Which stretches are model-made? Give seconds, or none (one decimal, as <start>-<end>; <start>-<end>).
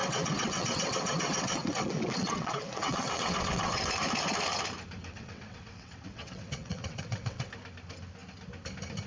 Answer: 0.0-3.8; 5.0-7.5